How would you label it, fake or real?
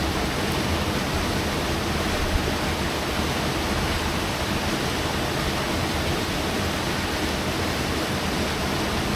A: real